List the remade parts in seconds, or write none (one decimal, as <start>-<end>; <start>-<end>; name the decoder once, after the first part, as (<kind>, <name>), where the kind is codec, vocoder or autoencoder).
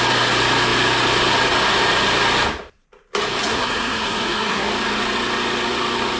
3.5-4.7 (codec, SNAC)